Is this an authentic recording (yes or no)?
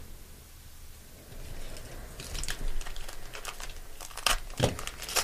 yes